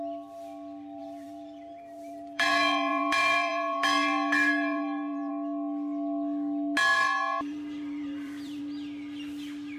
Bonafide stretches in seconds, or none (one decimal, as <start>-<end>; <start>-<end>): 0.0-1.0; 5.3-6.9; 8.6-9.8